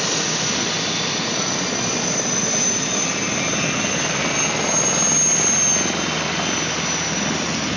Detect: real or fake real